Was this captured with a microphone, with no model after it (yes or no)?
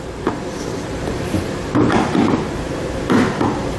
no